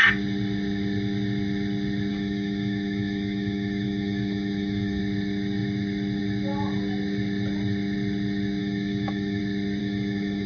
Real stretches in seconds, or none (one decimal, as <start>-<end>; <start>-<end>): 0.0-2.1; 5.0-8.6; 9.4-9.8